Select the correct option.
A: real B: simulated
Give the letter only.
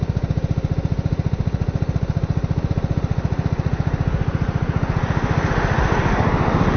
A